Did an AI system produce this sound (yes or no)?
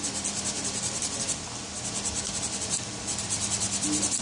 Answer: no